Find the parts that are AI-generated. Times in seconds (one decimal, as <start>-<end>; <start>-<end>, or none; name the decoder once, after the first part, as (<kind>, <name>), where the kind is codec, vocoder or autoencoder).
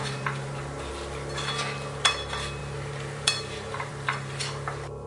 0.0-0.9 (vocoder, BigVGAN v2); 2.6-4.4